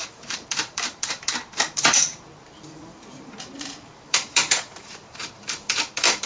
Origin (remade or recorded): remade